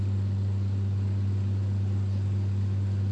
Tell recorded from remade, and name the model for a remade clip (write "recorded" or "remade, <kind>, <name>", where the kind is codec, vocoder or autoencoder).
recorded